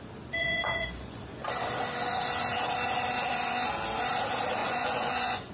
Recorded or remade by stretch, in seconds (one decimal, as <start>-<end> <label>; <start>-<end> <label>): 0.0-0.4 recorded; 0.4-1.2 remade; 1.2-4.6 recorded; 4.6-5.5 remade